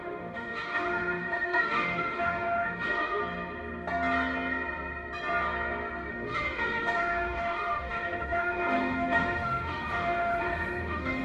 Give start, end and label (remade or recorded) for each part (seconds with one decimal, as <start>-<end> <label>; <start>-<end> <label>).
0.0-3.2 remade; 3.2-6.1 recorded; 6.1-11.2 remade